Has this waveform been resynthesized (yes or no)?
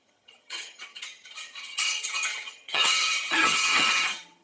yes